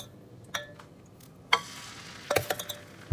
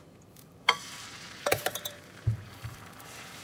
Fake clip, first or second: second